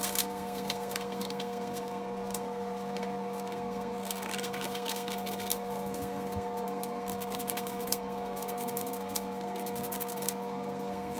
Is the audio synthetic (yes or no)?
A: yes